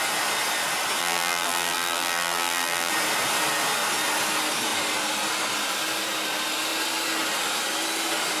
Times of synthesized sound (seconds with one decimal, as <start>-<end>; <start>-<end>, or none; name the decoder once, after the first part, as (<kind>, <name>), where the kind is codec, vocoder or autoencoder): 1.0-2.9 (vocoder, BigVGAN v2)